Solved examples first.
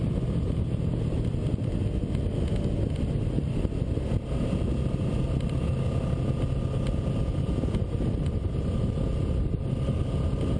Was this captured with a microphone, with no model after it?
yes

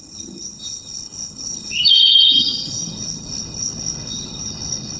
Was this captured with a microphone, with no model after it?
no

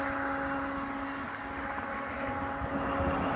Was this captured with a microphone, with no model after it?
yes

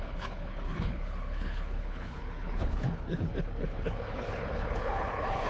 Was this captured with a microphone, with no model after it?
no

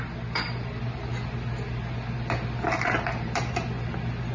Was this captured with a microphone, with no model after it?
yes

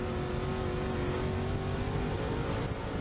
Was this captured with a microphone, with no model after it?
yes